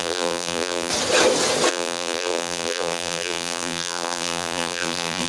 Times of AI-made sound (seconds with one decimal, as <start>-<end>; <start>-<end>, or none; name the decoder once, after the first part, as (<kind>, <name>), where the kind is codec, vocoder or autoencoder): 0.0-0.9 (vocoder, BigVGAN v2); 1.7-5.3